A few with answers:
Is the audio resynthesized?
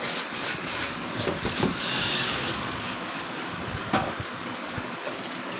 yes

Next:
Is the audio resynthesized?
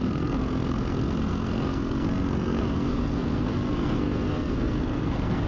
yes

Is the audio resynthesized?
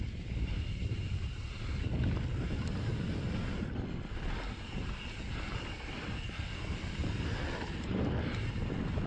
no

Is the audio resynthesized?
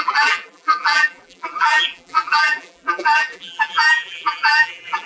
yes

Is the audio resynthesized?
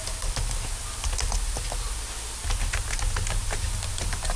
no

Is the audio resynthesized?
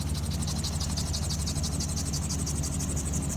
no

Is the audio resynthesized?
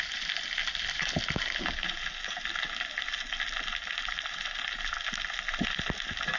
no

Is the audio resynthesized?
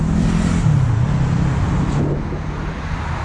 no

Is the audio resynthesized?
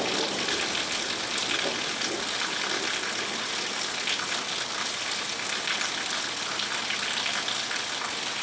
no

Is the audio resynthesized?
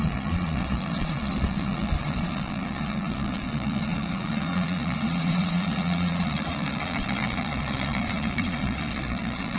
yes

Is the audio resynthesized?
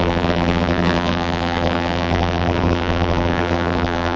yes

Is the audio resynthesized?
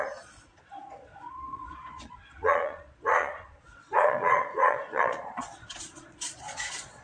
yes